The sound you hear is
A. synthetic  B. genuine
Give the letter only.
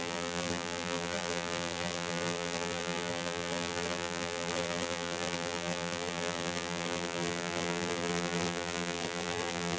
A